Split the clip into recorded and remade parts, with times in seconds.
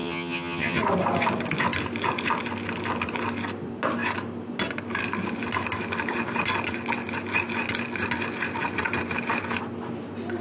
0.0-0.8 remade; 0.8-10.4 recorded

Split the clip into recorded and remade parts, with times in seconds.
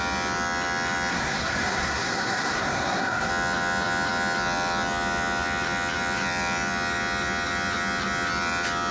0.0-1.1 recorded; 1.1-3.3 remade; 3.3-8.9 recorded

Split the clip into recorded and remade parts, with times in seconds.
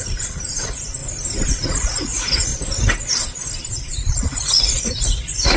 0.0-1.0 remade; 1.0-1.5 recorded; 1.5-2.5 remade; 2.5-3.7 recorded; 3.7-5.6 remade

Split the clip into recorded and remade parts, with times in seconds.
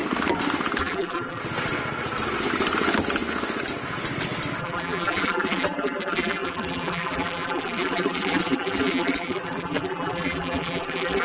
0.0-0.8 recorded; 0.8-1.4 remade; 1.4-4.6 recorded; 4.6-11.2 remade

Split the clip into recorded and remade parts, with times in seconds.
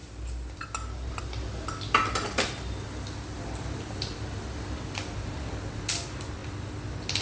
0.0-7.2 recorded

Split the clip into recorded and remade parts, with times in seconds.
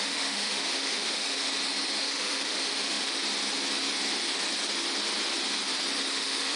0.0-1.5 remade; 1.5-2.0 recorded; 2.0-3.2 remade; 3.2-6.1 recorded; 6.1-6.6 remade